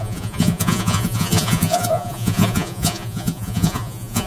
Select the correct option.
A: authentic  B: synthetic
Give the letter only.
B